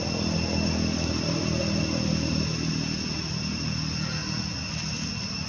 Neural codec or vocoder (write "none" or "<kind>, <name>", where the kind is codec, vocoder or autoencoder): none